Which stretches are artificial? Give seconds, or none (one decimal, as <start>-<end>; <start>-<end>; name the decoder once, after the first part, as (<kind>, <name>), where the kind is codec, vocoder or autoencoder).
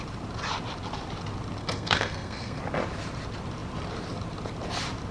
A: 1.6-2.6 (codec, SNAC)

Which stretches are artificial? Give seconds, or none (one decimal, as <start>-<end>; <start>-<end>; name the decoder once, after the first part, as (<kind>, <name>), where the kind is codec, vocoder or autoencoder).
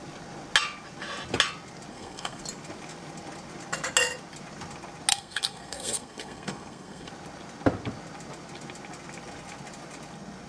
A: 1.9-2.4 (codec, SNAC); 5.1-7.1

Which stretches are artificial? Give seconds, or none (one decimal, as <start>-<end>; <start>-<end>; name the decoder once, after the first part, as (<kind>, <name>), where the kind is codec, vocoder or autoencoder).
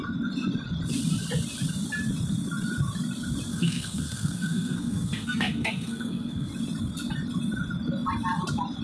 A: 3.5-6.5 (codec, SNAC)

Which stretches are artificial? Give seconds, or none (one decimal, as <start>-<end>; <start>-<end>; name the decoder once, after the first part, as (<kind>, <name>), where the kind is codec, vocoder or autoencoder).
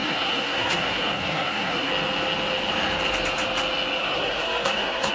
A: 0.0-1.9 (codec, SNAC); 4.0-5.1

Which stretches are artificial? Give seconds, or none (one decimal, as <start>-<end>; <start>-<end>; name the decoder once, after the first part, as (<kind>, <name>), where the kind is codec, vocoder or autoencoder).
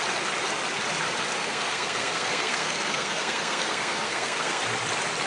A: 1.4-4.6 (codec, SNAC)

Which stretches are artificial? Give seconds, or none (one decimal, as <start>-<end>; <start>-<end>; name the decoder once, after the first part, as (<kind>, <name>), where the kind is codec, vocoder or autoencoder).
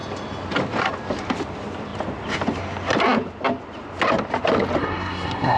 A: 4.8-5.6 (codec, SNAC)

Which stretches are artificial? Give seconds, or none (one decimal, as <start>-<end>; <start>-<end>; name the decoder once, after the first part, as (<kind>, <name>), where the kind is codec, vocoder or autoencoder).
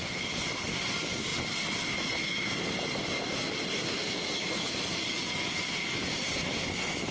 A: none